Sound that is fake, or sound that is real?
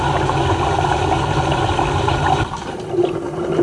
real